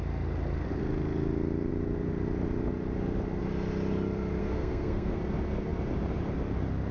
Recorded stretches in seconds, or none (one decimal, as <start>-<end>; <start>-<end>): 0.0-4.4; 5.2-6.9